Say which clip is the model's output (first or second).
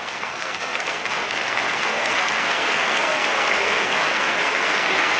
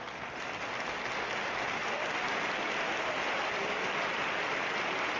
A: first